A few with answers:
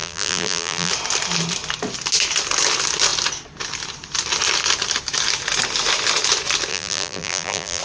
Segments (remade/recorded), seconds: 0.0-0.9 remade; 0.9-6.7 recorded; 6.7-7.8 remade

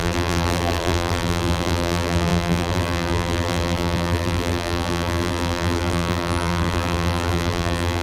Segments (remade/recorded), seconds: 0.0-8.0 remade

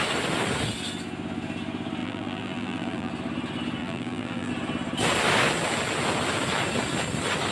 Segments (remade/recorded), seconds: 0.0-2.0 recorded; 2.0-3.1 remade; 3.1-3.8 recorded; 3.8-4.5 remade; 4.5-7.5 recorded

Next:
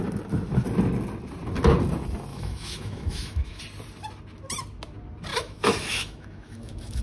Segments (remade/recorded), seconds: 0.0-2.3 recorded; 2.3-3.6 remade; 3.6-5.3 recorded; 5.3-7.0 remade